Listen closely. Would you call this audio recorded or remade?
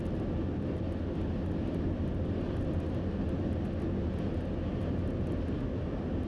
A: recorded